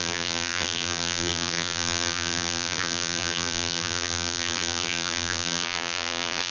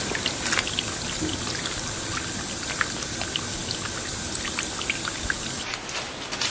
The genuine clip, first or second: second